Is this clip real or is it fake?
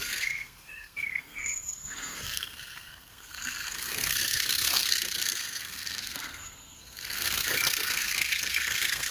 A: fake